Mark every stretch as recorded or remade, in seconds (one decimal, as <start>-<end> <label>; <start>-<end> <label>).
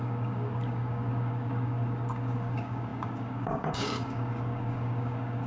0.0-5.5 remade